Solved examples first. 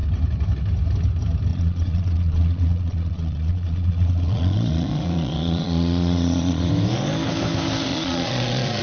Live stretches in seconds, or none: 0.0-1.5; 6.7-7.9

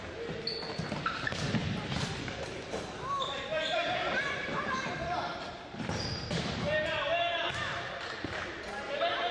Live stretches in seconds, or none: 0.0-1.6; 2.6-5.3; 7.5-9.3